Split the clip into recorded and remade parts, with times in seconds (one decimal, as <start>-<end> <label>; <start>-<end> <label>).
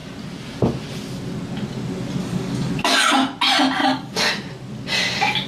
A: 0.0-2.2 recorded; 2.2-2.7 remade; 2.7-3.8 recorded; 3.8-4.3 remade; 4.3-5.5 recorded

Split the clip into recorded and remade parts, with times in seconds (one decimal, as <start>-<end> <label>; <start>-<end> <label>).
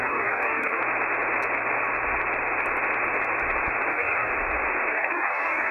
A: 0.0-0.8 remade; 0.8-3.9 recorded; 3.9-4.3 remade; 4.3-4.9 recorded; 4.9-5.7 remade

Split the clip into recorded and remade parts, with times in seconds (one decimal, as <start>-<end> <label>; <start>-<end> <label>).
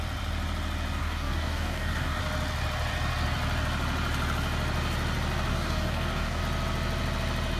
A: 0.0-1.0 recorded; 1.0-2.2 remade; 2.2-5.5 recorded; 5.5-6.4 remade; 6.4-7.6 recorded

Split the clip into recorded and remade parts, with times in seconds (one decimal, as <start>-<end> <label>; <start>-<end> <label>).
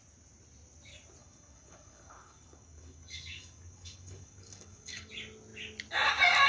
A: 0.0-1.2 recorded; 1.2-5.1 remade; 5.1-6.5 recorded